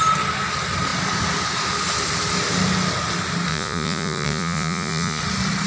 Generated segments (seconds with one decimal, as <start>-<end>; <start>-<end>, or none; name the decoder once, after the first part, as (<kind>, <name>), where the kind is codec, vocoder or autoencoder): 3.5-5.2 (vocoder, Vocos)